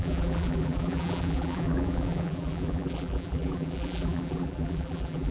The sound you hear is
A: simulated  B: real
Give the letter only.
A